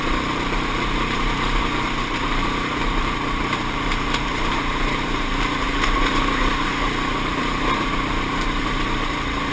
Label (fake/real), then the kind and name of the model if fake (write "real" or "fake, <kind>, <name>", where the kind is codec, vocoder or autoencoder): fake, vocoder, BigVGAN v2